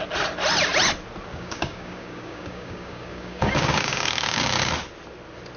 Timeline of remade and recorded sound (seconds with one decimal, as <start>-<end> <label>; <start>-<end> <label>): 0.0-1.3 recorded; 1.3-4.7 remade; 4.7-5.6 recorded